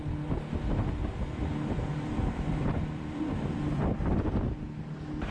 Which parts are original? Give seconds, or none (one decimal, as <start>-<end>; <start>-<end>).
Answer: 0.0-1.0; 3.8-5.3